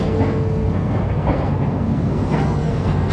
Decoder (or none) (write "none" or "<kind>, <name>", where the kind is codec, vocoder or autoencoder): codec, SNAC